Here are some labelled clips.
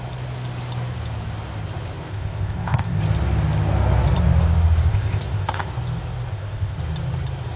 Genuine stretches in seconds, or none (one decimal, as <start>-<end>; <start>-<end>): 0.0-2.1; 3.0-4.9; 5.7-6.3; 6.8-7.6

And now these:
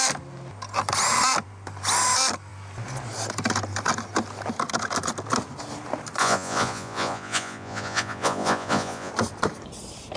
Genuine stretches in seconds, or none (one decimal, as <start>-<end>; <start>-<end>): 0.0-6.2; 9.1-10.2

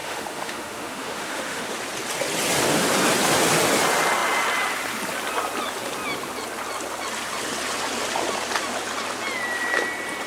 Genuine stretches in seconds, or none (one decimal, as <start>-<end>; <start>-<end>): 1.7-10.3